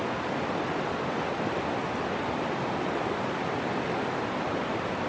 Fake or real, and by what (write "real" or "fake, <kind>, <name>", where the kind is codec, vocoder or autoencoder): real